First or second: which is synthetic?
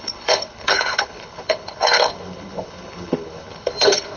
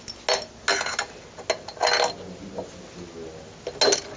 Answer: first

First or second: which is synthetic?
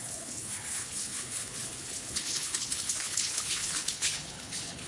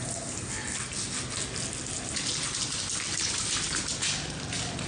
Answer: first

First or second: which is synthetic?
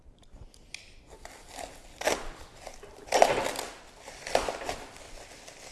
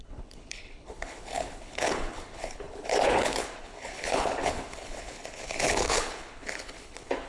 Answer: second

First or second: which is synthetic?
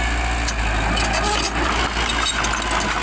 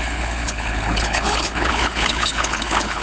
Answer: second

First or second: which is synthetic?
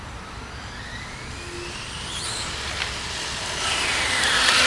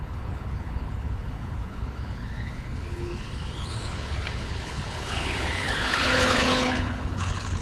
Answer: second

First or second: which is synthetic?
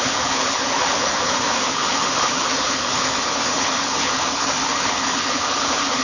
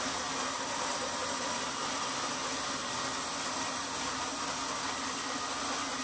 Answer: first